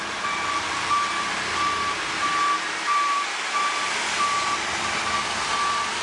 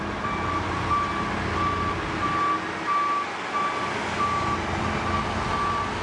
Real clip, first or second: second